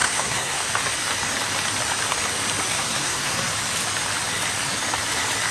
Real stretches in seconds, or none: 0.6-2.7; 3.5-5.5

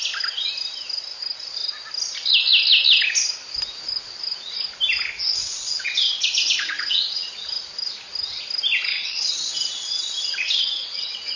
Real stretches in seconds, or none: 0.0-5.4; 7.3-8.9